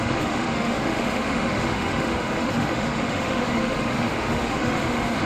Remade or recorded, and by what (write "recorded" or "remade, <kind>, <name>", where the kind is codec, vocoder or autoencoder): remade, autoencoder, DAC-VAE